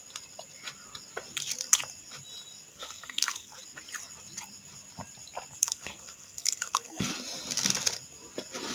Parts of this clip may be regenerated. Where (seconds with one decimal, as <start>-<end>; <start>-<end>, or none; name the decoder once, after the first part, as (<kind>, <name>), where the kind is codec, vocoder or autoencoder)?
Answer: 2.7-3.6 (codec, SNAC); 5.6-7.1